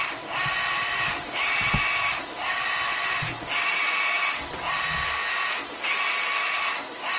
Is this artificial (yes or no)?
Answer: yes